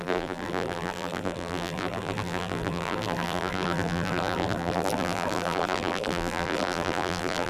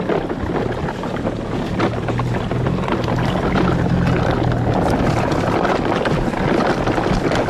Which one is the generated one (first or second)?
first